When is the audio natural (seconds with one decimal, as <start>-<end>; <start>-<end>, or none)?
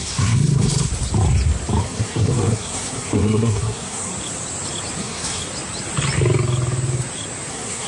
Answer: 0.9-1.8; 4.1-5.0; 5.4-7.5